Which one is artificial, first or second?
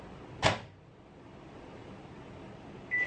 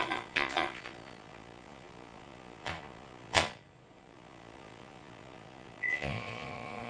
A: second